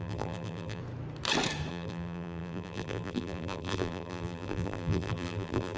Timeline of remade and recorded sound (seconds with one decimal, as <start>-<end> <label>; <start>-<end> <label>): 0.0-0.8 remade; 0.8-1.7 recorded; 1.7-5.8 remade